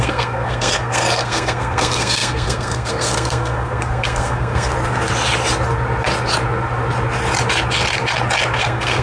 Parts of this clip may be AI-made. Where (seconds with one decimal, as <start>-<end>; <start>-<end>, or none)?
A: 0.0-4.7; 8.6-9.0